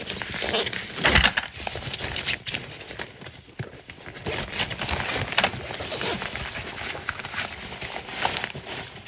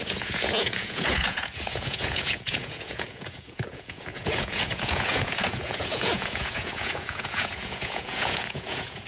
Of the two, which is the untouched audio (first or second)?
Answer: first